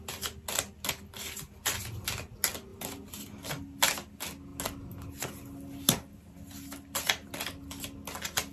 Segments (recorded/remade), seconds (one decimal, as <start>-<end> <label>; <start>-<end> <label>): 0.0-8.5 recorded